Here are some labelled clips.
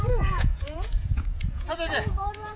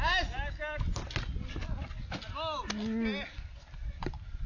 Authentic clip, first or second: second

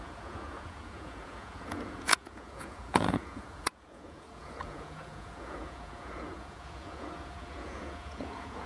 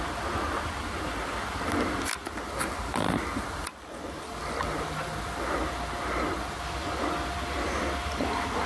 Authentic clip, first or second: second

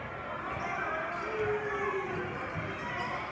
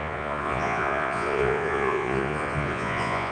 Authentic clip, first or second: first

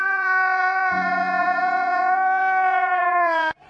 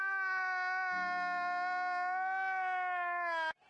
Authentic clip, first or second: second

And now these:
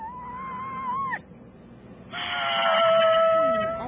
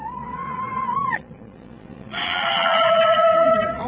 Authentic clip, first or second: first